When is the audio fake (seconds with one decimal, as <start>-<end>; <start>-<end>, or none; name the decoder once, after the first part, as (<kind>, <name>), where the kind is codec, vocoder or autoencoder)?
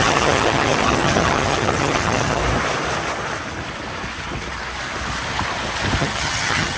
0.0-2.4 (vocoder, HiFi-GAN); 6.0-6.8